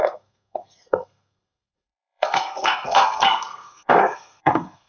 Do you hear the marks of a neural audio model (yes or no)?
yes